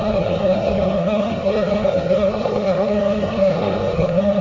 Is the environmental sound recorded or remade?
remade